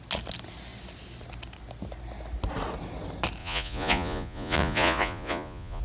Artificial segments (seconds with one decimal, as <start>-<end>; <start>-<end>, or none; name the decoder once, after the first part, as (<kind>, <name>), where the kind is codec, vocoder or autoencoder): 3.4-5.8 (vocoder, Vocos)